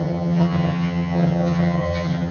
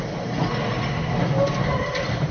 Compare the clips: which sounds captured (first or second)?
second